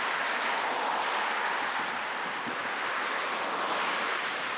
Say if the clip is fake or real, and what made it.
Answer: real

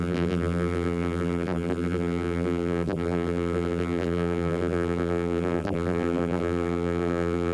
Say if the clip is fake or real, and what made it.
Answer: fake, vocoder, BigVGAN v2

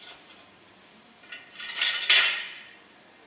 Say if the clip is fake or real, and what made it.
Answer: fake, vocoder, BigVGAN v2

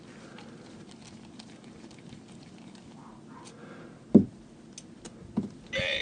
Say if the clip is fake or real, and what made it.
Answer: real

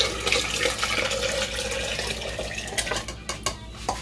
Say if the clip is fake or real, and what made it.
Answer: real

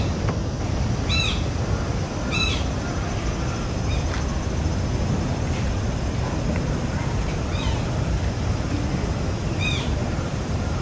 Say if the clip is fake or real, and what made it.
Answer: fake, vocoder, BigVGAN v2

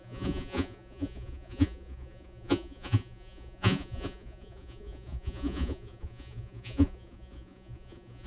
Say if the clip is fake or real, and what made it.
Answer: fake, vocoder, Vocos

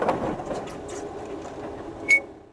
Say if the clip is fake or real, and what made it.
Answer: fake, vocoder, BigVGAN v2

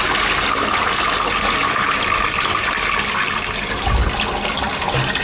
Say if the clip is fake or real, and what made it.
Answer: real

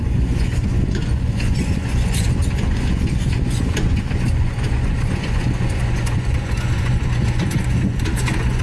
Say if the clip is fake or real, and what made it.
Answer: fake, vocoder, Vocos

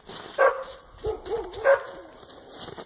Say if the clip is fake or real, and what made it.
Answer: real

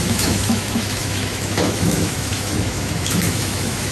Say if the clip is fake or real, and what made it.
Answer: fake, autoencoder, DAC-VAE